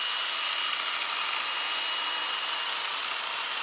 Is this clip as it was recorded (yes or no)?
yes